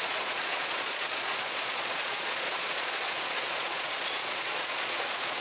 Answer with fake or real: fake